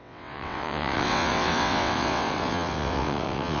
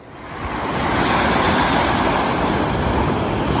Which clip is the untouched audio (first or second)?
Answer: second